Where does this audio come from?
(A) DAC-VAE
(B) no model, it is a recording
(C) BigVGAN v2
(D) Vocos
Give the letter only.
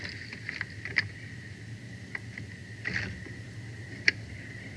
B